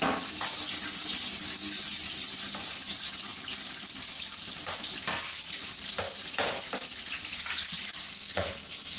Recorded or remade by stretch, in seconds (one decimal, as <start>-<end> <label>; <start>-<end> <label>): 0.0-8.1 recorded; 8.1-9.0 remade

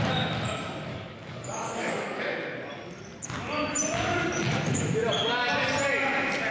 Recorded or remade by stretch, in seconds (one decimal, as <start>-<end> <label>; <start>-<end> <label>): 0.0-0.9 recorded; 0.9-2.2 remade; 2.2-6.5 recorded

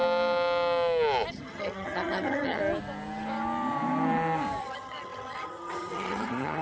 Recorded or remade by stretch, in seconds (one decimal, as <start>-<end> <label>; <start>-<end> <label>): 0.0-1.3 recorded; 1.3-2.6 remade; 2.6-4.6 recorded; 4.6-6.6 remade